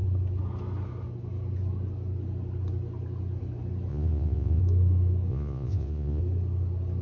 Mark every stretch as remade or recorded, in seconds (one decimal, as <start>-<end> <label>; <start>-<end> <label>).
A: 0.0-3.9 recorded; 3.9-4.6 remade; 4.6-5.3 recorded; 5.3-6.2 remade; 6.2-7.0 recorded